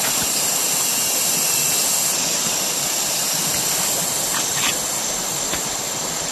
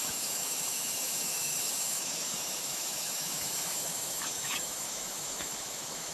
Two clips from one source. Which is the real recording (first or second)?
first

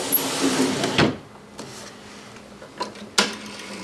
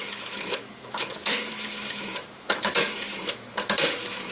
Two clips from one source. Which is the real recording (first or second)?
first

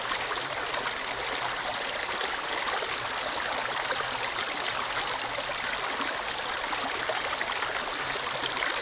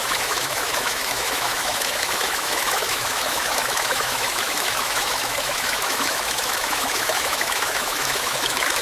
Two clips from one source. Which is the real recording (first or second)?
first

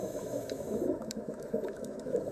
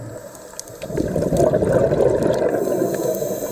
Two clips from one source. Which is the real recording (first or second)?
second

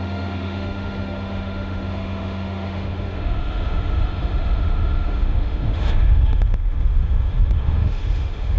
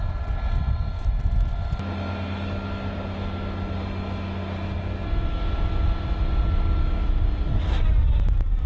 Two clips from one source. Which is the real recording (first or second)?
second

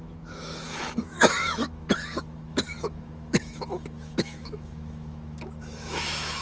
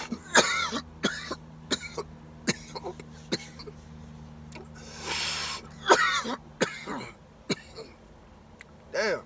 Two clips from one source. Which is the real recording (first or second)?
second